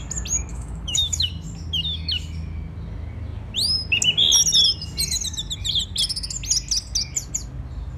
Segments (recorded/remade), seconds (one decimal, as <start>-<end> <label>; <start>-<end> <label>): 0.0-0.5 recorded; 0.5-1.3 remade; 1.3-8.0 recorded